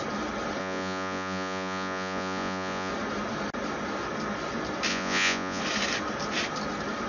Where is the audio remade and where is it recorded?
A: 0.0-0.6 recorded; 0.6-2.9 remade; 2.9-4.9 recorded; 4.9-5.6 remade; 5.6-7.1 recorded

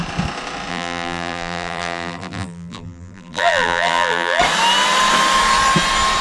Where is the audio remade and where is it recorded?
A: 0.0-0.7 recorded; 0.7-4.4 remade; 4.4-6.2 recorded

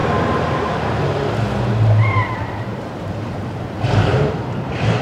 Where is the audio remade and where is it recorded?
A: 0.0-1.0 remade; 1.0-2.7 recorded; 2.7-5.0 remade

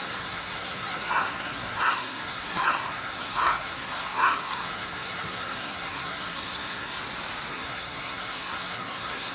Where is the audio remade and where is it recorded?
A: 0.0-7.0 remade; 7.0-7.5 recorded; 7.5-9.3 remade

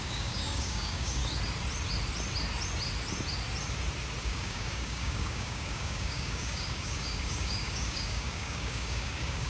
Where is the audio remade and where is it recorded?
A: 0.0-1.2 remade; 1.2-4.2 recorded; 4.2-9.5 remade

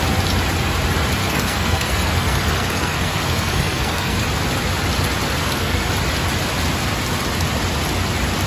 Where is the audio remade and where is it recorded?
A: 0.0-1.2 recorded; 1.2-4.2 remade; 4.2-5.4 recorded; 5.4-5.9 remade; 5.9-8.5 recorded

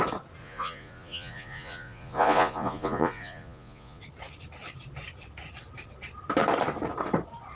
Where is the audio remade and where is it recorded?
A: 0.0-0.4 recorded; 0.4-4.0 remade; 4.0-7.6 recorded

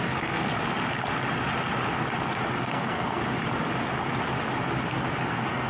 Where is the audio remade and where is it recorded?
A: 0.0-0.5 remade; 0.5-2.6 recorded; 2.6-3.2 remade; 3.2-5.3 recorded; 5.3-5.7 remade